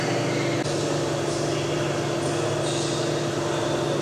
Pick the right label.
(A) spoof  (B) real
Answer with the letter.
B